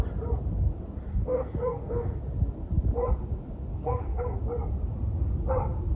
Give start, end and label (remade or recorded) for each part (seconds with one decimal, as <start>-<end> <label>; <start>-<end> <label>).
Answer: 0.0-1.1 recorded; 1.1-2.2 remade; 2.2-3.7 recorded; 3.7-4.4 remade; 4.4-5.9 recorded